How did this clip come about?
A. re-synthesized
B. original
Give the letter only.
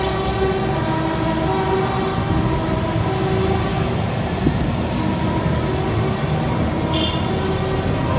B